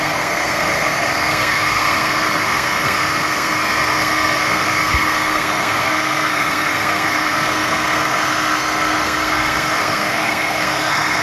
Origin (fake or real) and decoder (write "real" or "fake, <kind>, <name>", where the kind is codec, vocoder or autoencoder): fake, codec, SNAC